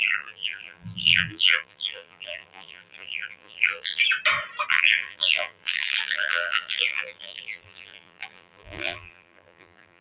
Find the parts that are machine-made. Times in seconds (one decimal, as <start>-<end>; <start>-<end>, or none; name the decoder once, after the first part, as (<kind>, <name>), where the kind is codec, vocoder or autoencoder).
0.0-4.0 (vocoder, BigVGAN v2); 4.7-10.0